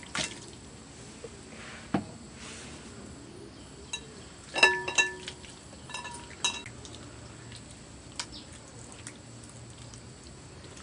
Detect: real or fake real